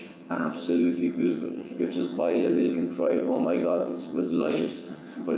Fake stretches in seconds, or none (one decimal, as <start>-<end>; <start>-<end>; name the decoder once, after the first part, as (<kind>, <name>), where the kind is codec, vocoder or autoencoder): 0.0-5.4 (vocoder, HiFi-GAN)